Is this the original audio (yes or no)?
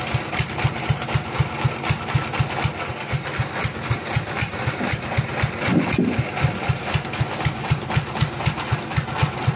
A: yes